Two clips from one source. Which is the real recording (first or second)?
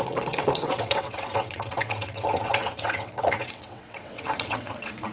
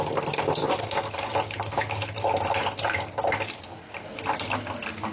second